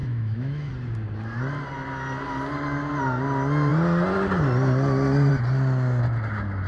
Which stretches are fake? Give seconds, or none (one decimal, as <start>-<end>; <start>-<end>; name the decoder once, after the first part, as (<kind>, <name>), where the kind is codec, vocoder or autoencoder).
0.0-0.7 (autoencoder, DAC-VAE)